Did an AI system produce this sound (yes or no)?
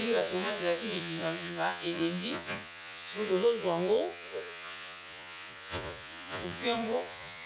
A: yes